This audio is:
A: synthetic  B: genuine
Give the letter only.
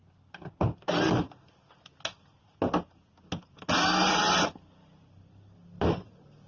B